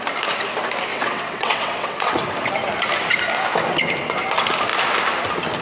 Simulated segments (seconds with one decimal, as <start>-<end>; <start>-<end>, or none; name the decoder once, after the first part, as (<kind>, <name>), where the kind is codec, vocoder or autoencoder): 0.9-2.3 (vocoder, WaveNeXt)